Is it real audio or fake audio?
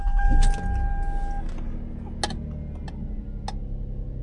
real